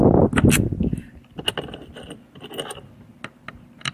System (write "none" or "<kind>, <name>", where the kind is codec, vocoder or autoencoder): none